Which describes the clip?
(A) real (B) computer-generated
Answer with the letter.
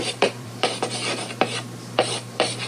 B